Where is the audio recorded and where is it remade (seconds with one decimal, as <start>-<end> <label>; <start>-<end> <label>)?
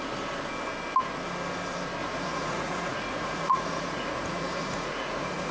0.0-2.0 recorded; 2.0-5.5 remade